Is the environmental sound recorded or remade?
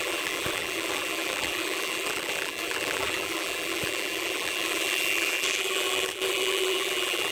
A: remade